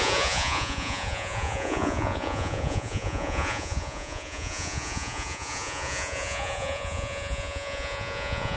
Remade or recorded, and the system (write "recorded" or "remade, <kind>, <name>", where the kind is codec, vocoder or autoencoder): remade, vocoder, Vocos